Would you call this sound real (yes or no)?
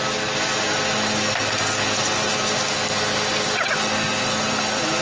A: yes